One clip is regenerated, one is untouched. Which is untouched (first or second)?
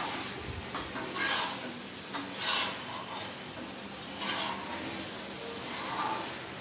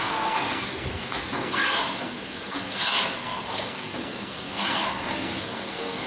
first